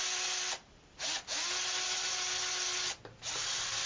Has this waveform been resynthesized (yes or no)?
no